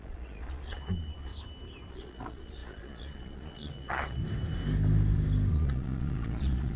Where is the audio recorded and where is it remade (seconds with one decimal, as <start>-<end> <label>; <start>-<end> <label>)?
0.0-1.3 remade; 1.3-1.9 recorded; 1.9-4.2 remade; 4.2-5.5 recorded; 5.5-6.8 remade